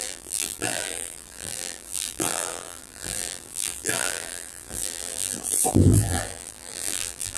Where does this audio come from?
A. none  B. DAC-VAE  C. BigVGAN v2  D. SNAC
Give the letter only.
C